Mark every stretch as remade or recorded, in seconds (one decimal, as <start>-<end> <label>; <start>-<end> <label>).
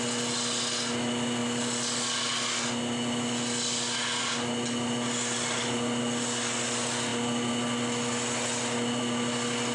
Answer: 0.0-9.7 recorded